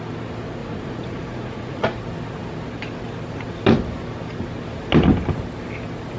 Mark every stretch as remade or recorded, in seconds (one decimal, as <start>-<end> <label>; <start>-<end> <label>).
0.0-0.6 recorded; 0.6-2.0 remade; 2.0-6.2 recorded